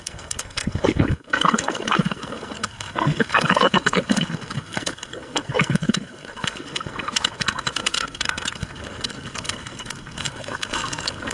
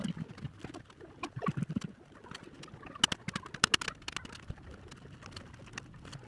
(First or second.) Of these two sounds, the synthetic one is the first